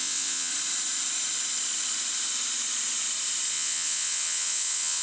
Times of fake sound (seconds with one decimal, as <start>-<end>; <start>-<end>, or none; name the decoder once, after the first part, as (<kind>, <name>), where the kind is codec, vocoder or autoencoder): 0.0-0.5 (vocoder, WaveNeXt); 3.5-5.0